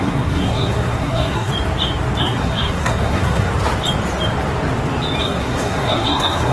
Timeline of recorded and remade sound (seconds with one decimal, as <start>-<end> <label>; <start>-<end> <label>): 0.0-1.5 remade; 1.5-2.2 recorded; 2.2-3.5 remade; 3.5-5.2 recorded; 5.2-6.5 remade